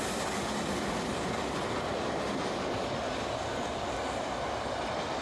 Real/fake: real